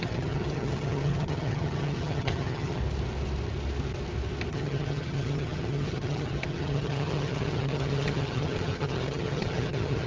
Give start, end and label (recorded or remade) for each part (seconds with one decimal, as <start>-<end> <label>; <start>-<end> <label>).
0.0-2.8 remade; 2.8-4.5 recorded; 4.5-10.1 remade